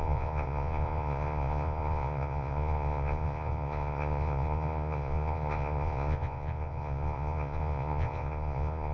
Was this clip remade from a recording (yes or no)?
yes